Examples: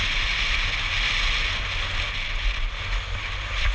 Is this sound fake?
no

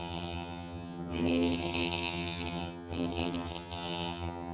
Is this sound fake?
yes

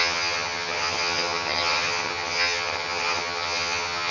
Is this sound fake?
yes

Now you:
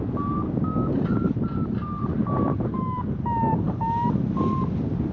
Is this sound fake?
no